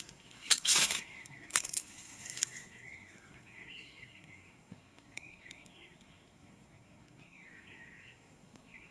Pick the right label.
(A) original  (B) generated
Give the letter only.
B